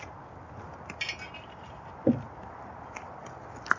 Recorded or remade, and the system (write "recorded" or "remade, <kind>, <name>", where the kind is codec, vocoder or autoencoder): recorded